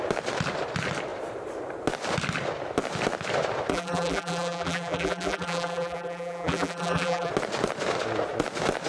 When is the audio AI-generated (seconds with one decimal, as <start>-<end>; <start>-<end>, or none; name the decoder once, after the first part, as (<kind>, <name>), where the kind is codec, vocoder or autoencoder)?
3.7-7.3 (vocoder, BigVGAN v2)